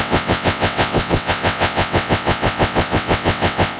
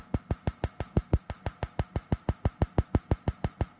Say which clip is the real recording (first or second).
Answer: second